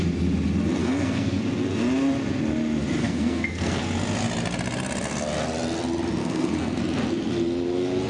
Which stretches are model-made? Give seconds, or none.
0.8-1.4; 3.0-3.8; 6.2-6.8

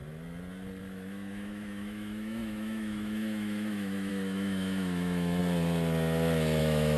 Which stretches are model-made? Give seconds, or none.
0.8-5.4; 6.6-7.0

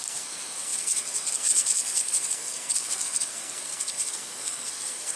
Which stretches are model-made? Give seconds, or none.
0.0-5.2

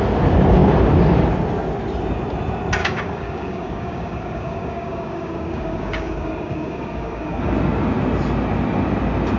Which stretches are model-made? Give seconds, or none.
2.8-7.5

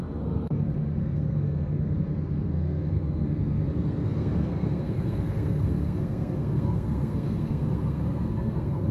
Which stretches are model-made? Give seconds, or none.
0.0-8.9

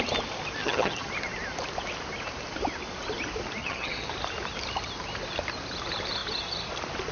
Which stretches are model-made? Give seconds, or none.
0.6-1.1; 3.6-4.1

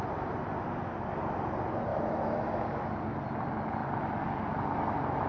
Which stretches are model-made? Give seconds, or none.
1.9-2.9

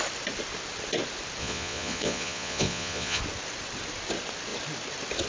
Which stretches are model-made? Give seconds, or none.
1.4-3.2